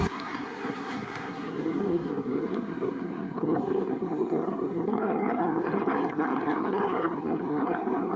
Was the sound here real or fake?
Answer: fake